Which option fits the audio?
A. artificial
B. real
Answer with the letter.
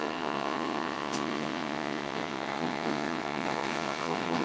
A